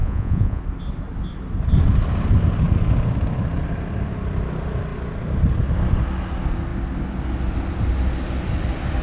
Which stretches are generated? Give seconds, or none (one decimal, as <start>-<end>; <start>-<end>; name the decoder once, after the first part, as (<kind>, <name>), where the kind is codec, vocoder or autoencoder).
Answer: 0.0-0.6 (vocoder, Vocos)